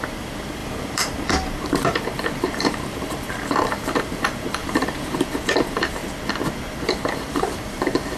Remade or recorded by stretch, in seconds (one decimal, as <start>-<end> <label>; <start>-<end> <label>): 0.0-6.0 remade; 6.0-6.7 recorded; 6.7-8.2 remade

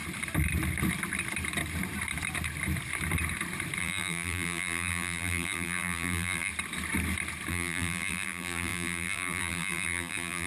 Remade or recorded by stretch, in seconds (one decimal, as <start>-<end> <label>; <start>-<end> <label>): 0.0-3.8 recorded; 3.8-6.5 remade; 6.5-7.5 recorded; 7.5-10.5 remade